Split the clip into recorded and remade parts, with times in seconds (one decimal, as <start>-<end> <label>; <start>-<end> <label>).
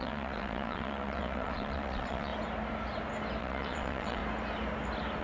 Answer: 0.0-2.3 remade; 2.3-3.4 recorded; 3.4-4.2 remade; 4.2-5.2 recorded